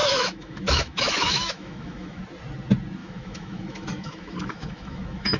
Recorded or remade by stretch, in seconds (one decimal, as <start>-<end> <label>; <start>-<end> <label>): 0.0-2.2 remade; 2.2-3.0 recorded; 3.0-5.4 remade